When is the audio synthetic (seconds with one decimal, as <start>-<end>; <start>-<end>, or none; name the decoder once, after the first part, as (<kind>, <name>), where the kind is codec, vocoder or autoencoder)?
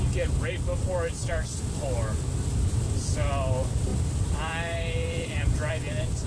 3.9-5.7 (vocoder, BigVGAN v2)